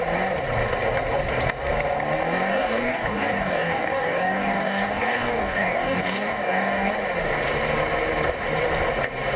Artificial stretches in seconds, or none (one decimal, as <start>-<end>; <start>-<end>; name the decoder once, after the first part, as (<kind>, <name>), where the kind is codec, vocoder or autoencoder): 2.5-6.9 (codec, DAC)